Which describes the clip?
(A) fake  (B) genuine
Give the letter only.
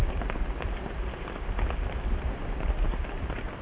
B